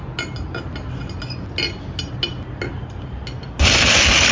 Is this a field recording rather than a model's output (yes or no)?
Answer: yes